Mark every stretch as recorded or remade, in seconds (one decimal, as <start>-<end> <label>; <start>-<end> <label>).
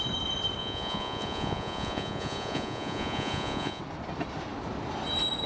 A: 0.0-0.6 recorded; 0.6-3.8 remade; 3.8-5.5 recorded